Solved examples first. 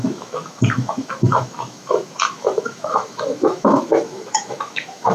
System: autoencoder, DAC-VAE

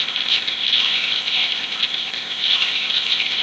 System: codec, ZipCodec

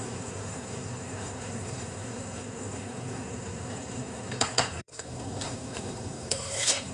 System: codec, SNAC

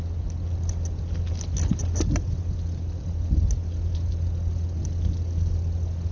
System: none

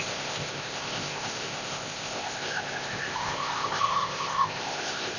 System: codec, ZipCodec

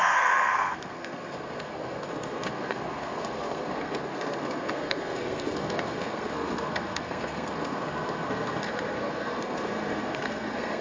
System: codec, SNAC